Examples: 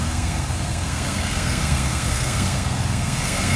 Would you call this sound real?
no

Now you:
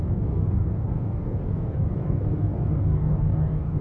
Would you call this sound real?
no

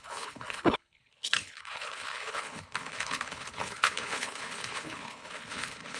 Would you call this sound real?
no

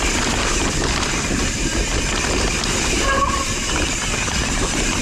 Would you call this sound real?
yes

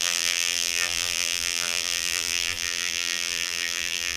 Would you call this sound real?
no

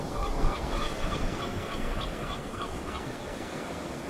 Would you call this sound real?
no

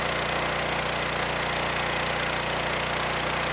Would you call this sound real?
yes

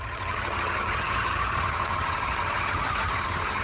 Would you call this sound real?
no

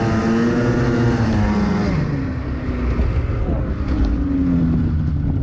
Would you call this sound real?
yes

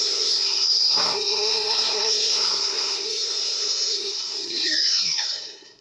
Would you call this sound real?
no